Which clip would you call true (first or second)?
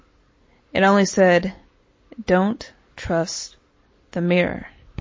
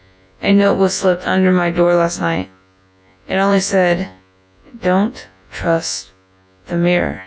first